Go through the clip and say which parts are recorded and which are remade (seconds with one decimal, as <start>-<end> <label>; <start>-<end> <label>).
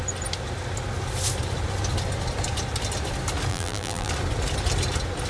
0.0-3.5 recorded; 3.5-4.1 remade; 4.1-5.3 recorded